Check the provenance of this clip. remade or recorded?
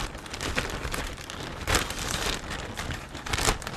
recorded